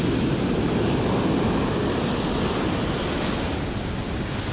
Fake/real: real